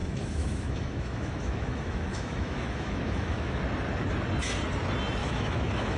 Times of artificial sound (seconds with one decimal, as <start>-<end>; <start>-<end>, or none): 0.0-3.6; 5.2-6.0